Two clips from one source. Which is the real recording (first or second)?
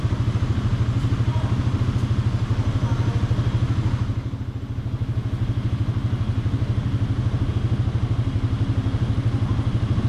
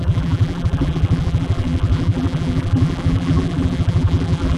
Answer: first